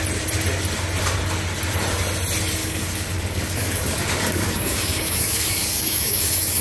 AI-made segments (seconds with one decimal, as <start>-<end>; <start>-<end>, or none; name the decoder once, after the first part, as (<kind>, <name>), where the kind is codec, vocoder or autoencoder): 2.6-6.6 (codec, DAC)